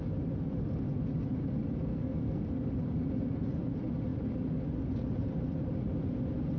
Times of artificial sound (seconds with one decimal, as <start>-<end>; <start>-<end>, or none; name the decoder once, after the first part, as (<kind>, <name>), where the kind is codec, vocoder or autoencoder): 1.9-2.4 (codec, SNAC)